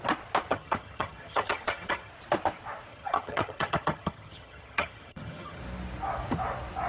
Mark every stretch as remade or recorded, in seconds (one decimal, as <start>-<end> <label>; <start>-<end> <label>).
0.0-0.5 recorded; 0.5-2.1 remade; 2.1-2.9 recorded; 2.9-5.6 remade; 5.6-6.9 recorded